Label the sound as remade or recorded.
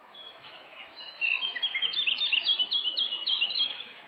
remade